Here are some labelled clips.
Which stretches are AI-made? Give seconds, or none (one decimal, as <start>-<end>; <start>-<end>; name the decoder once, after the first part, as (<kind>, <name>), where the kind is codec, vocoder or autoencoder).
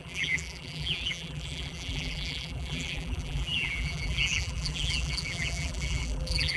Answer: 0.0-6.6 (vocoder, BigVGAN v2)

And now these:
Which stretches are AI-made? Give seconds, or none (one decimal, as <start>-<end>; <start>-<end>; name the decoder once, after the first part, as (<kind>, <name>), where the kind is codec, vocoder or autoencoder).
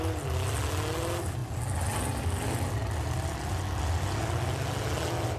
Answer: none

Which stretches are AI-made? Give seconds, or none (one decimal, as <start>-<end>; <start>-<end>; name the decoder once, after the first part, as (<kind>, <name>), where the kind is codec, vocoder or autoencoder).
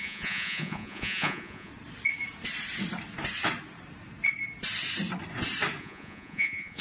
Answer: 0.0-1.7 (vocoder, Vocos); 5.8-6.8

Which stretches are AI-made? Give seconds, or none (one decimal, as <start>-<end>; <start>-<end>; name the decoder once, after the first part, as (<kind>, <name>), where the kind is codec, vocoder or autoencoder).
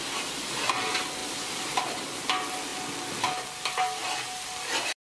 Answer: none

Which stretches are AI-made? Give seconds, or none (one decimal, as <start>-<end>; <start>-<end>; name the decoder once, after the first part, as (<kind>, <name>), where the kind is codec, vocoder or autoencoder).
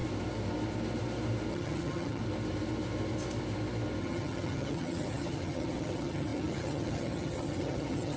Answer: 1.5-2.2 (vocoder, HiFi-GAN); 4.0-8.2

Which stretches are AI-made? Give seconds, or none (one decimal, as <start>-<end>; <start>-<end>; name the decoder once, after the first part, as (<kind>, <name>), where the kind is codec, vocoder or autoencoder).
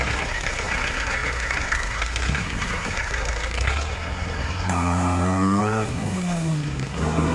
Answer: 0.0-7.3 (codec, SNAC)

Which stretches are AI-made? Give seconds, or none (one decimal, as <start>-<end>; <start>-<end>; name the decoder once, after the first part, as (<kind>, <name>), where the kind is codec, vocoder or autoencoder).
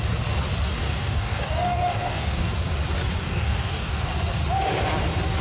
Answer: 0.8-2.5 (codec, DAC); 3.2-4.1